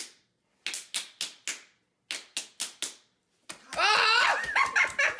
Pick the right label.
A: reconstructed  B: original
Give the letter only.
B